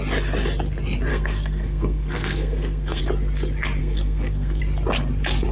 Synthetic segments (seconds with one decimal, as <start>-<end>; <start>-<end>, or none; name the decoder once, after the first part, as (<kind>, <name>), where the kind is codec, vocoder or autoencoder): 1.1-3.0 (codec, SNAC); 3.8-4.6